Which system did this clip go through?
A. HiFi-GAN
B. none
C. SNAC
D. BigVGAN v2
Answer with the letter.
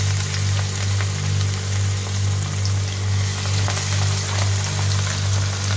B